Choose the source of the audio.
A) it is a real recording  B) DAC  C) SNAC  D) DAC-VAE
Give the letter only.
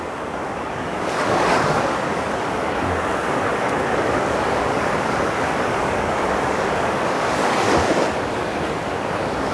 B